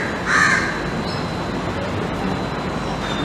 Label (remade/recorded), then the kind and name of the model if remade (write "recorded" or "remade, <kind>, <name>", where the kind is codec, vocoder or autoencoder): recorded